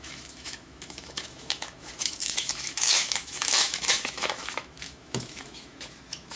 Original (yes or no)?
no